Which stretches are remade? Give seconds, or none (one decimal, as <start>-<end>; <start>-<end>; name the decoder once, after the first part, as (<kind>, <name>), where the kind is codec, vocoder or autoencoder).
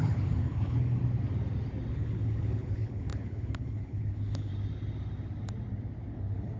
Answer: 0.0-1.0 (codec, HILCodec); 1.9-4.5; 6.1-6.6